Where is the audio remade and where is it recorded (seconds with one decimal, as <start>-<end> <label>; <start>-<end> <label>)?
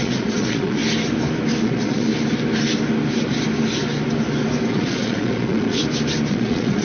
0.0-0.8 remade; 0.8-1.6 recorded; 1.6-2.1 remade; 2.1-4.7 recorded; 4.7-5.8 remade; 5.8-6.3 recorded; 6.3-6.8 remade